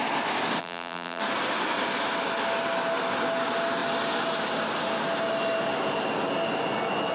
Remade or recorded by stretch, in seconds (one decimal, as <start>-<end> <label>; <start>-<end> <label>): 0.0-0.6 recorded; 0.6-1.2 remade; 1.2-7.1 recorded

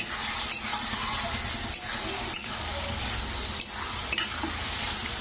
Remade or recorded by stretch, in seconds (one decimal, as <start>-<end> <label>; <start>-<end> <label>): 0.0-2.4 recorded; 2.4-3.1 remade; 3.1-5.2 recorded

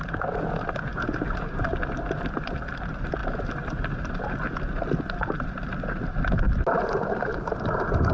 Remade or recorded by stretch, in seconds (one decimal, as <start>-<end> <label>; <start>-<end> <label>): 0.0-7.3 recorded; 7.3-8.1 remade

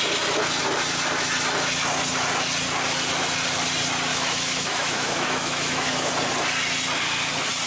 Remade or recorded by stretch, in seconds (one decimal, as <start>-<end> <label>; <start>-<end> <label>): 0.0-4.1 recorded; 4.1-6.1 remade; 6.1-7.7 recorded

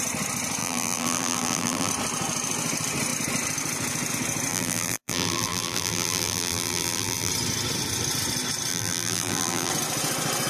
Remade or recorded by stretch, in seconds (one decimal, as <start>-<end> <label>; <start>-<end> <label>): 0.0-0.6 recorded; 0.6-1.9 remade; 1.9-4.5 recorded; 4.5-7.3 remade; 7.3-8.7 recorded; 8.7-9.7 remade; 9.7-10.5 recorded

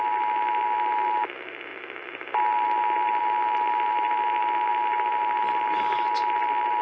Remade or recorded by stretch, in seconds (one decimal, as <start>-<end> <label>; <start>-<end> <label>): 0.0-6.8 recorded

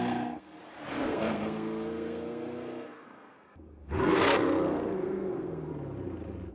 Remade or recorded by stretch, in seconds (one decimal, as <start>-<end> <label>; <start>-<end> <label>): 0.0-0.6 remade; 0.6-1.1 recorded; 1.1-5.7 remade; 5.7-6.5 recorded

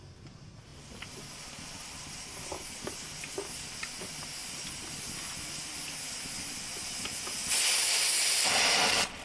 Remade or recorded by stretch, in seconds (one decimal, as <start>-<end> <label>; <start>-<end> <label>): 0.0-9.2 recorded